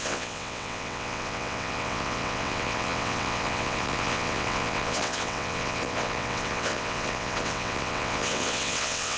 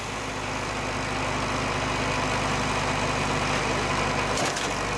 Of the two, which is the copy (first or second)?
first